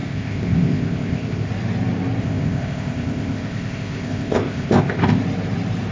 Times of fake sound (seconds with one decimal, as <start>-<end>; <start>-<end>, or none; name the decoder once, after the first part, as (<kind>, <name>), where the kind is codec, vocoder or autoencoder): 0.0-1.5 (codec, ZipCodec); 2.2-5.2